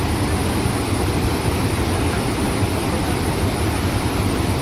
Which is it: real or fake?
fake